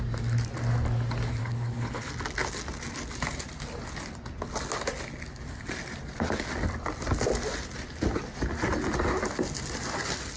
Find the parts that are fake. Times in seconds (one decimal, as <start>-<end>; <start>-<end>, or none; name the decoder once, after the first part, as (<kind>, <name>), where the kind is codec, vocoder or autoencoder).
1.4-2.1 (codec, HILCodec)